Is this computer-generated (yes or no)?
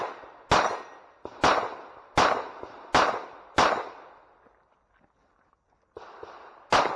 no